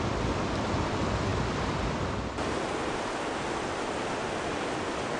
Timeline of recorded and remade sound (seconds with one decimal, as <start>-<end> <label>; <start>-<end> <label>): 0.0-5.2 recorded